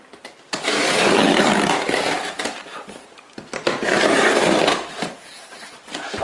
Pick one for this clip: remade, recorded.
remade